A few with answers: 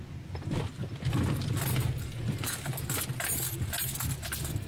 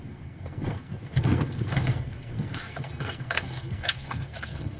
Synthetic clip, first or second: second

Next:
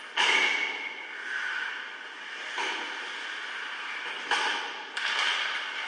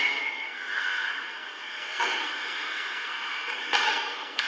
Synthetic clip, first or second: second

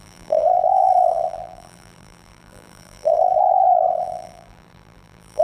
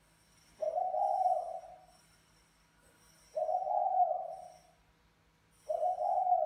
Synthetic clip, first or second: first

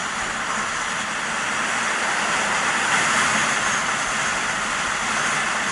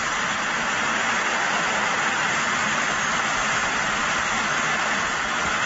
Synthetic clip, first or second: second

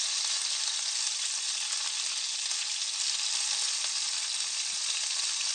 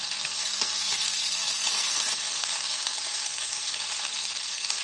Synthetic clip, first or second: second